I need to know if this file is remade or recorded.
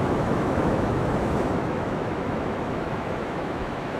remade